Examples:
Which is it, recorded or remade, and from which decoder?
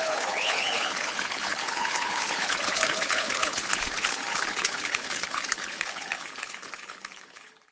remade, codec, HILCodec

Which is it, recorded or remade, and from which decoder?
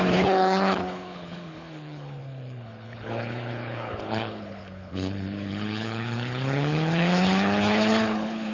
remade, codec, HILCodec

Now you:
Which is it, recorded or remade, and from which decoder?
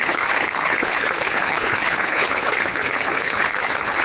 remade, codec, HILCodec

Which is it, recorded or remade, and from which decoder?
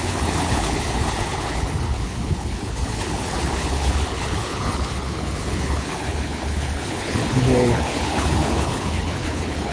remade, codec, HILCodec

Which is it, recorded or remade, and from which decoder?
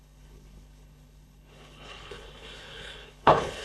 remade, codec, HILCodec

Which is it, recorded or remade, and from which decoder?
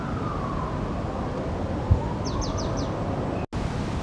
recorded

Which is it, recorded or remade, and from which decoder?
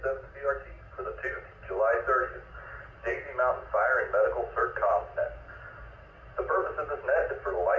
recorded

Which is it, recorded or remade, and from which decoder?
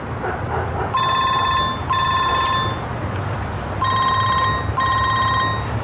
recorded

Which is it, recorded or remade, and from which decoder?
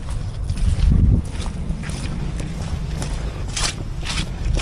recorded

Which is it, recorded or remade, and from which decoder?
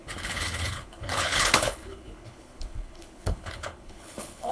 remade, codec, HILCodec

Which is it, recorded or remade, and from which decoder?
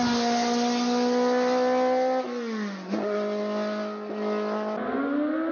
recorded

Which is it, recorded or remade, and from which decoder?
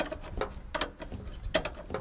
recorded